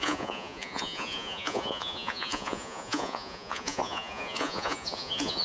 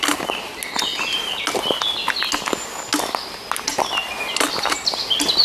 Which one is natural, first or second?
second